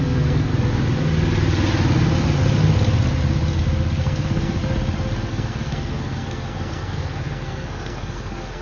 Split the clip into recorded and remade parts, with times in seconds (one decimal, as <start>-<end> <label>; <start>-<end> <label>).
0.0-0.5 remade; 0.5-4.0 recorded; 4.0-4.6 remade; 4.6-5.3 recorded; 5.3-8.6 remade